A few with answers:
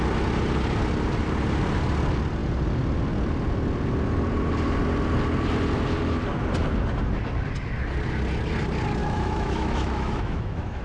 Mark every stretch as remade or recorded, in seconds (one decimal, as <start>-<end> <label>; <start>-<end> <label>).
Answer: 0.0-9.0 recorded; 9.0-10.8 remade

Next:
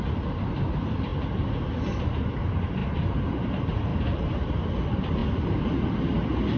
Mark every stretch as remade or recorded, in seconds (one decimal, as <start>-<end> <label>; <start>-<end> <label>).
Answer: 0.0-6.6 recorded

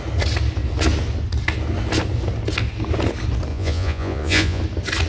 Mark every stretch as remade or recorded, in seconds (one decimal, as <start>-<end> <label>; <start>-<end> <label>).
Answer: 0.0-3.5 recorded; 3.5-4.6 remade; 4.6-5.1 recorded